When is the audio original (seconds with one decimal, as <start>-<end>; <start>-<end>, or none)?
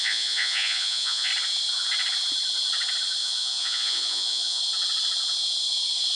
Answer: 1.3-3.2; 4.6-6.2